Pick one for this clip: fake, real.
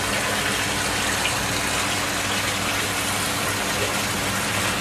real